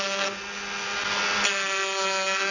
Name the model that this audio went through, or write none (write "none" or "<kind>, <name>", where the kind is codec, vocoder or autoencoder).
none